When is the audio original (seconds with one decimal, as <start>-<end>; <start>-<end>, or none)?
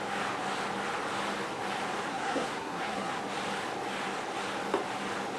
0.0-2.1; 3.2-5.4